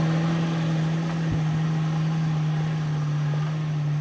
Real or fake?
real